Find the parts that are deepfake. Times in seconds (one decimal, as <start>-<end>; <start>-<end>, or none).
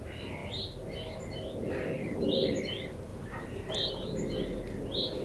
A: 2.0-2.6; 3.1-3.7